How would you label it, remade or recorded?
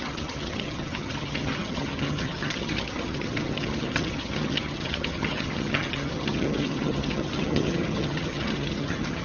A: remade